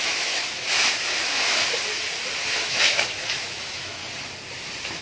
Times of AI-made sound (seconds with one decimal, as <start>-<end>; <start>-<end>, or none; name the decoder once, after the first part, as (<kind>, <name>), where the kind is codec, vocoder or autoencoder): 0.0-1.6 (autoencoder, DAC-VAE); 2.5-4.0